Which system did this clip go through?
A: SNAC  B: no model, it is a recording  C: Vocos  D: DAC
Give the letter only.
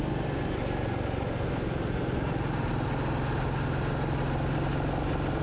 B